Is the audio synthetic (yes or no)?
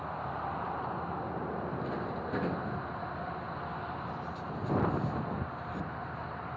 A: no